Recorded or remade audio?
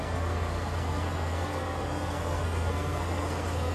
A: remade